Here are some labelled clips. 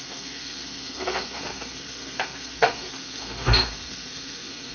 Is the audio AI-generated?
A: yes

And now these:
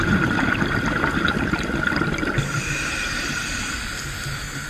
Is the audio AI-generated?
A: no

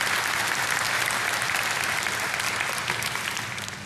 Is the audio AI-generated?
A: no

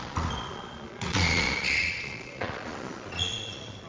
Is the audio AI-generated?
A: yes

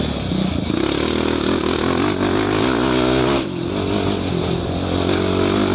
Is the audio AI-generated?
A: no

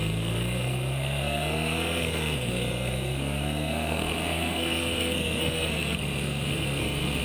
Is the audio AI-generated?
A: yes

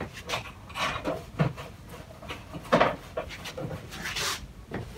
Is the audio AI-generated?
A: no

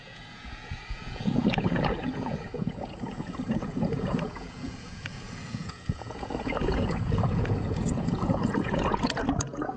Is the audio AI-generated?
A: yes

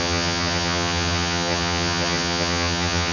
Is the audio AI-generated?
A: yes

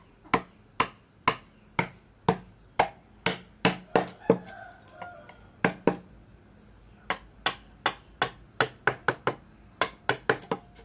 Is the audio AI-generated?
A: no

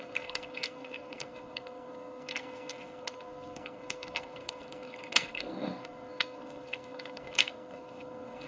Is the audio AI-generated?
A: yes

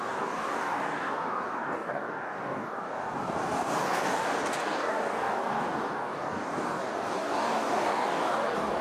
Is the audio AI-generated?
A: yes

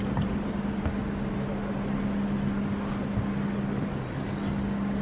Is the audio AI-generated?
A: no